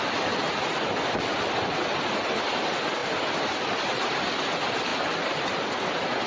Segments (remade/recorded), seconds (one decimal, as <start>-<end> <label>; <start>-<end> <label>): 0.0-3.0 recorded; 3.0-4.4 remade; 4.4-4.9 recorded; 4.9-6.3 remade